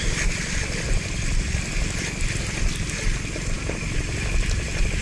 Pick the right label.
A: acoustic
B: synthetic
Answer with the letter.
A